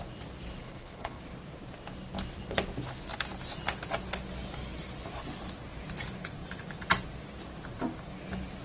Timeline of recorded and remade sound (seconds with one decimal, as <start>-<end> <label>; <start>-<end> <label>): 0.0-0.6 recorded; 0.6-1.2 remade; 1.2-8.6 recorded